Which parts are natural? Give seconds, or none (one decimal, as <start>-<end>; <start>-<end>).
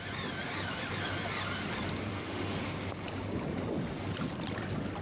0.0-2.1; 2.6-5.0